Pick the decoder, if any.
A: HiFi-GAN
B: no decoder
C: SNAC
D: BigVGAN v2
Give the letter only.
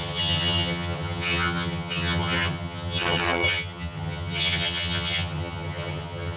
A